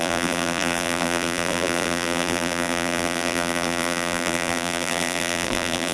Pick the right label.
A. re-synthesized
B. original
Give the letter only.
A